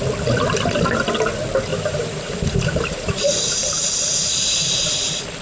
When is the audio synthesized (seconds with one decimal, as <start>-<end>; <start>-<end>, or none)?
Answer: 1.7-4.9